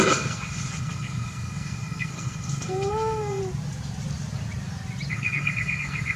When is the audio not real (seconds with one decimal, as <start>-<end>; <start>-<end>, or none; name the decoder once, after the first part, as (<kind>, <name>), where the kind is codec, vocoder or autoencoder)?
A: 0.0-3.4 (codec, SNAC); 5.1-6.2